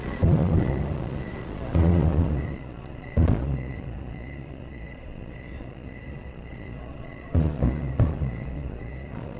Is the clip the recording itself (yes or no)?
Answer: no